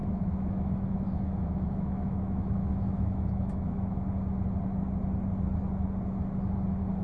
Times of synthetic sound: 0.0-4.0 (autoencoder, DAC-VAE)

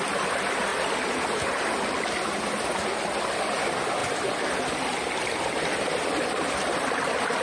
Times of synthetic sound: none

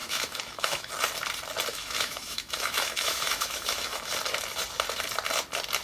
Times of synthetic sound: 0.0-0.9 (autoencoder, DAC-VAE); 1.7-4.1

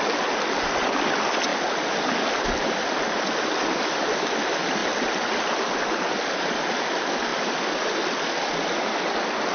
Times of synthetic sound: none

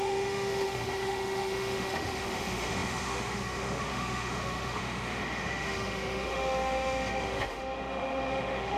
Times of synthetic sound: 0.0-8.8 (autoencoder, DAC-VAE)

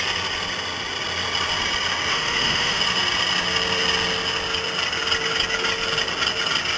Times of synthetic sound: 2.1-2.8 (autoencoder, DAC-VAE)

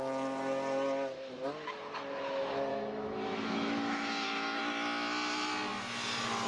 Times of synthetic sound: 2.7-4.6 (autoencoder, DAC-VAE)